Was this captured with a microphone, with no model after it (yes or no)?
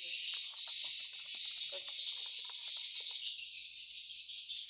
yes